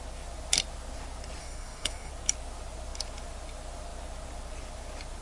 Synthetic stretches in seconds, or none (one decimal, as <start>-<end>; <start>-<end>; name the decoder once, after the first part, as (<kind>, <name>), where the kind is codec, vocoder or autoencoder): 1.4-2.1 (codec, DAC)